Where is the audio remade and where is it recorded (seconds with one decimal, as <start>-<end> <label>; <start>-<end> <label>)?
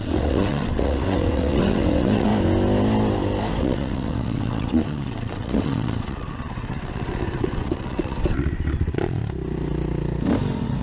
0.0-2.3 remade; 2.3-3.6 recorded; 3.6-9.2 remade; 9.2-10.8 recorded